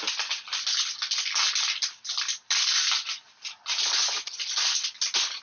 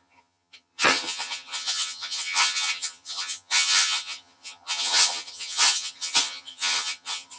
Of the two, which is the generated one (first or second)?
second